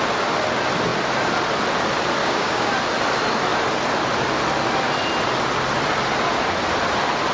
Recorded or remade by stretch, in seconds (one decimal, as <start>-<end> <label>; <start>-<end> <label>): 0.0-2.2 recorded; 2.2-2.7 remade; 2.7-7.3 recorded